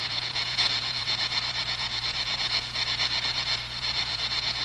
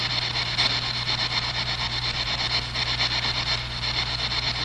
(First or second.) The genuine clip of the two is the second